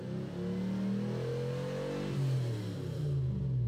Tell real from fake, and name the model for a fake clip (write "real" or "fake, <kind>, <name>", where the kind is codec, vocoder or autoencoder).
real